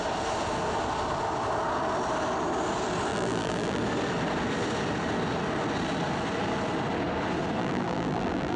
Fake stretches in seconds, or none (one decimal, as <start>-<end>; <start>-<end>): 3.1-3.8; 7.6-8.6